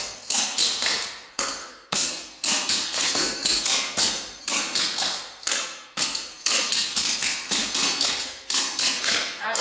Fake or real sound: fake